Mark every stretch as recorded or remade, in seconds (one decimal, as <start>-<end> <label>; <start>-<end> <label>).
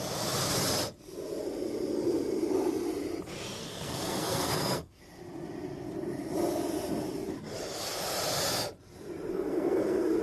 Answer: 0.0-3.6 recorded; 3.6-5.0 remade; 5.0-9.3 recorded; 9.3-10.2 remade